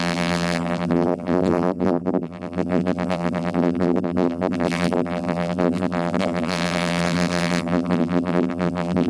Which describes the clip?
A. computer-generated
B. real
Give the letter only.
A